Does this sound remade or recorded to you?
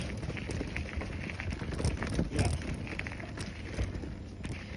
recorded